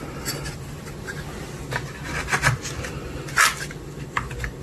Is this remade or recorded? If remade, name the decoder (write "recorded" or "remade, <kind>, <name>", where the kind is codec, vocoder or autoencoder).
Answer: recorded